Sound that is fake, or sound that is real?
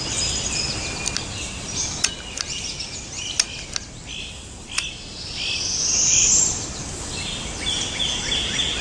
real